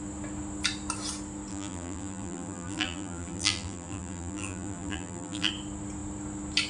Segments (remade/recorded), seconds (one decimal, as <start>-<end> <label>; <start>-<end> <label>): 0.0-1.5 recorded; 1.5-5.5 remade; 5.5-6.7 recorded